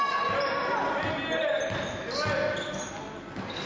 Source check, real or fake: real